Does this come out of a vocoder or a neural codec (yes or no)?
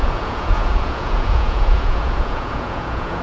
yes